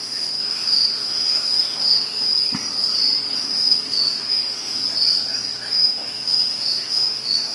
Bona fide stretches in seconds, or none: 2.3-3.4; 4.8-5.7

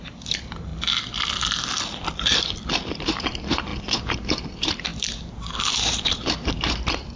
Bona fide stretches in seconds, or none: 0.7-3.0